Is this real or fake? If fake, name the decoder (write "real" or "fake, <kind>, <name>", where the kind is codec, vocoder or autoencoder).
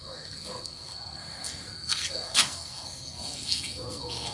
fake, codec, SNAC